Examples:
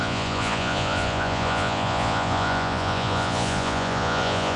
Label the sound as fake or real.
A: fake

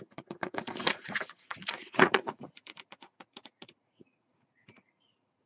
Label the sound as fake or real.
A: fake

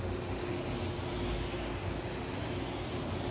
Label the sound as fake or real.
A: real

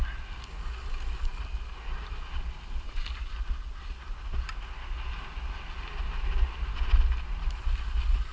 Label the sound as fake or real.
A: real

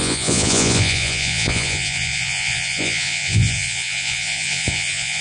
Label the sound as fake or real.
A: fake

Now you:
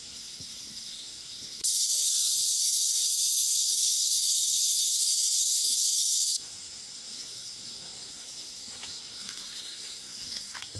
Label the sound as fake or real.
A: fake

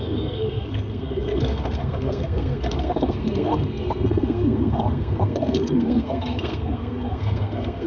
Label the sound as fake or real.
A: fake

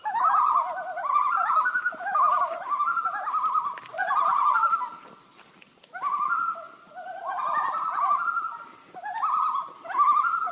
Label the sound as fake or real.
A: real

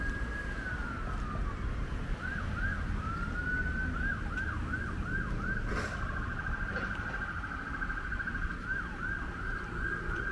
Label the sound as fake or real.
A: real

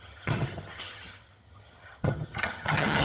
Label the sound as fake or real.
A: fake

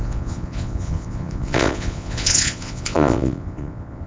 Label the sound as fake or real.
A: fake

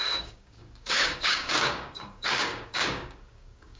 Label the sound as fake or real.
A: fake